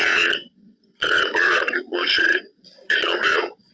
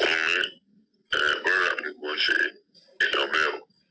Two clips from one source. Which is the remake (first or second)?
first